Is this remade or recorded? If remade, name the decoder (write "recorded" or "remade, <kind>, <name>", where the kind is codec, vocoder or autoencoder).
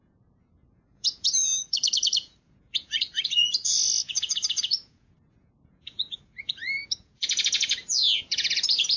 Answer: remade, vocoder, Vocos